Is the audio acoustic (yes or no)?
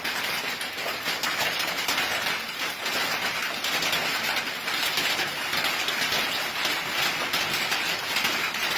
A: yes